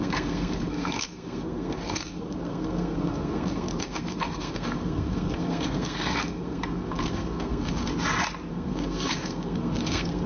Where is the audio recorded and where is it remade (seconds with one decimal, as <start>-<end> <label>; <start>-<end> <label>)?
0.0-7.9 remade; 7.9-8.5 recorded; 8.5-10.3 remade